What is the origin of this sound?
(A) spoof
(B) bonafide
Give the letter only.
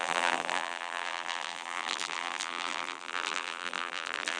A